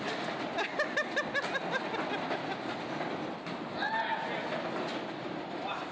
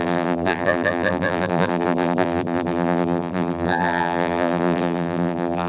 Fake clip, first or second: second